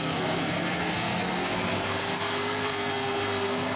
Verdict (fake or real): fake